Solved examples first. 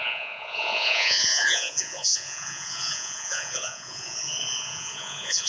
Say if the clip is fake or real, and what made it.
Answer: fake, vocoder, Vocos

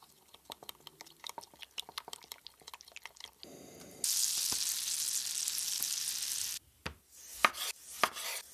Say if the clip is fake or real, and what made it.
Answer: real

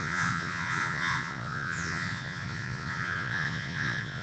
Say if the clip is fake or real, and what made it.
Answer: fake, vocoder, Vocos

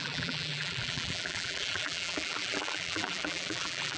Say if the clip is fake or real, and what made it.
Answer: fake, vocoder, BigVGAN v2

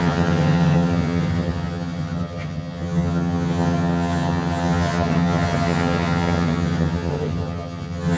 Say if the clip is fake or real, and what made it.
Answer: fake, vocoder, HiFi-GAN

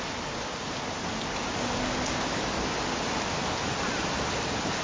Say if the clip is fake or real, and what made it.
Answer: real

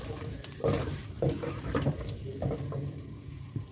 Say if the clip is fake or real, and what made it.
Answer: fake, vocoder, BigVGAN v2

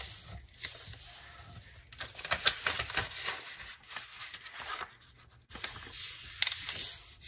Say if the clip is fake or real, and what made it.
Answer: real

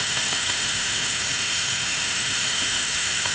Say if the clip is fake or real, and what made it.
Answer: fake, autoencoder, DAC-VAE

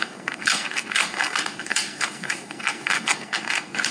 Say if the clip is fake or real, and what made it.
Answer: fake, codec, SNAC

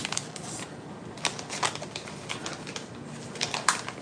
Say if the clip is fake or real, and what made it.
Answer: real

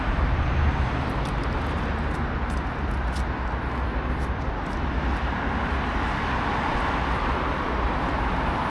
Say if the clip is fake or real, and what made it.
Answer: real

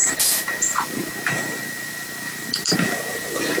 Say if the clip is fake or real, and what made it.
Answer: fake, vocoder, BigVGAN v2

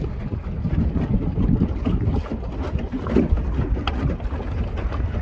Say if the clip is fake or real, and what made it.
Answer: real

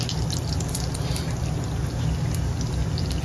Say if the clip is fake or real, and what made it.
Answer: real